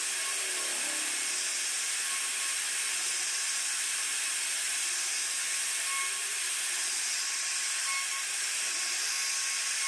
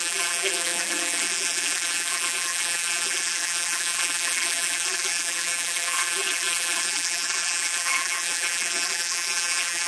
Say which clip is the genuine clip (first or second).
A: first